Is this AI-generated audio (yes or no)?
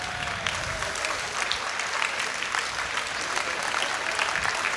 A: no